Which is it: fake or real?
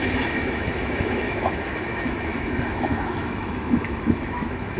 fake